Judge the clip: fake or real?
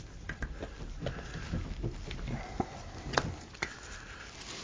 real